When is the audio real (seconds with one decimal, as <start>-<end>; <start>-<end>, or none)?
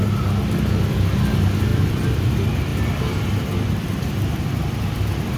0.0-1.7; 2.3-2.7; 3.9-5.4